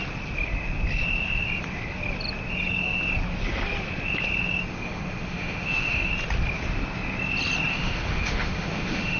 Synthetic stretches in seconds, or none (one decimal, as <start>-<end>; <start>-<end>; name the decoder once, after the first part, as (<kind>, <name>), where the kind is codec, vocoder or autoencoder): 4.7-6.1 (autoencoder, DAC-VAE); 7.7-9.2